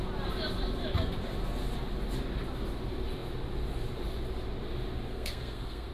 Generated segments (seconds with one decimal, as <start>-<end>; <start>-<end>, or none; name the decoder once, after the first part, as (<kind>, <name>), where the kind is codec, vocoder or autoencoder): 5.1-5.9 (codec, SNAC)